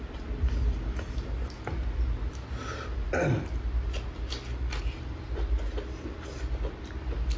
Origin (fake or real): real